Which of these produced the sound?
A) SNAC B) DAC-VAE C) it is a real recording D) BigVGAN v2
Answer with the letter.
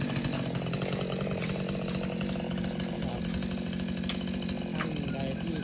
C